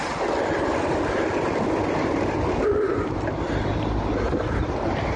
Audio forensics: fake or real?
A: real